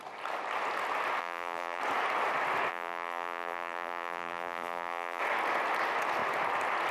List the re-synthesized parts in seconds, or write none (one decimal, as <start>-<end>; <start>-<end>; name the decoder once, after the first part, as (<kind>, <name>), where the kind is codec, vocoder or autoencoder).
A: 1.2-1.8 (vocoder, BigVGAN v2); 2.7-5.2